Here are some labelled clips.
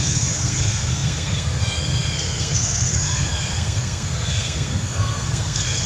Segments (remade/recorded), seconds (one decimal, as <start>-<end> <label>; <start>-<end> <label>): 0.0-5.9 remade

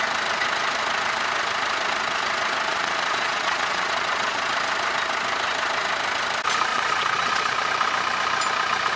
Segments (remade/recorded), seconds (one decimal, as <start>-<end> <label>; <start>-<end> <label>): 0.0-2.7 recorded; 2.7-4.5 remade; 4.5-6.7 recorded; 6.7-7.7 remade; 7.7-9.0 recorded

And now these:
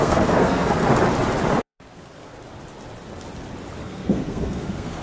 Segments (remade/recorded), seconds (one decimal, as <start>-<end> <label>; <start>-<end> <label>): 0.0-0.8 remade; 0.8-1.6 recorded; 1.6-2.3 remade; 2.3-3.8 recorded; 3.8-5.0 remade